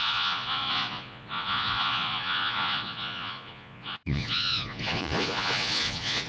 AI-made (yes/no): yes